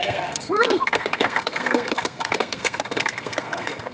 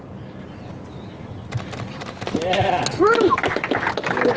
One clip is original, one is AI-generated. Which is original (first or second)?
second